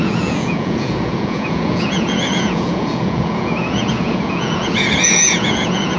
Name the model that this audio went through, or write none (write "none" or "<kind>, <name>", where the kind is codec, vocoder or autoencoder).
vocoder, Vocos